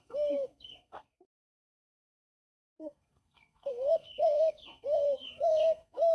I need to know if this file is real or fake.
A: fake